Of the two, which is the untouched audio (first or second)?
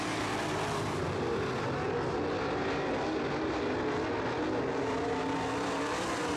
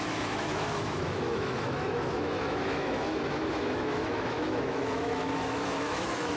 first